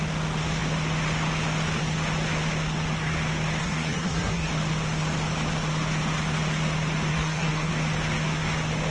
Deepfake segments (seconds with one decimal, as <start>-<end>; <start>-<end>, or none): 3.6-4.5; 7.1-7.7